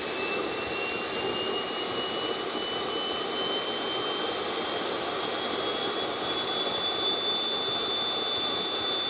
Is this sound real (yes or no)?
yes